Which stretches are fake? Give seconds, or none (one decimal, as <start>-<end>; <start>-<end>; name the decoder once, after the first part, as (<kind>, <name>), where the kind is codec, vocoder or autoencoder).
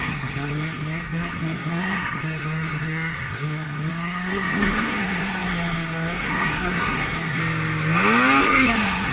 0.0-7.4 (codec, SNAC); 8.4-9.1